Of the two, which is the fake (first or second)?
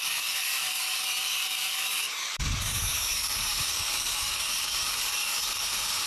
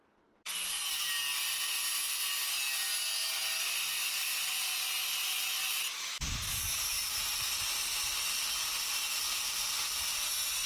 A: first